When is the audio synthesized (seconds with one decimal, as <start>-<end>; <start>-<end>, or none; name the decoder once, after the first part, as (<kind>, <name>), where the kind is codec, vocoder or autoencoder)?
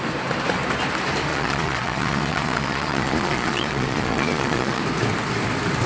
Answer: 1.3-4.8 (vocoder, Vocos)